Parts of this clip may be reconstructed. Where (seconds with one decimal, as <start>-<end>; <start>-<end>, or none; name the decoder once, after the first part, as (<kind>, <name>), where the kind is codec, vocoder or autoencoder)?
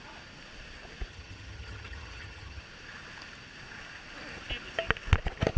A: 1.1-2.6 (vocoder, HiFi-GAN)